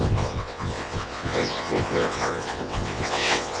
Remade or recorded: remade